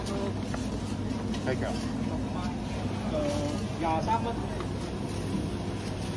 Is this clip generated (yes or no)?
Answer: no